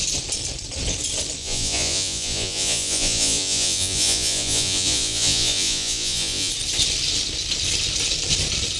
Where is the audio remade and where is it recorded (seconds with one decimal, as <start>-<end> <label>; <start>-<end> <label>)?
0.0-1.4 recorded; 1.4-6.5 remade; 6.5-8.8 recorded